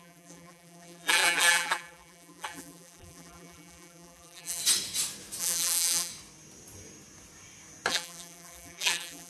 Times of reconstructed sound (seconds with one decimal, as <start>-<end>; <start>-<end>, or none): 0.0-4.6; 5.4-6.1; 7.9-9.3